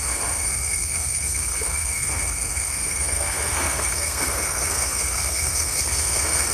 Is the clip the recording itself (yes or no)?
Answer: no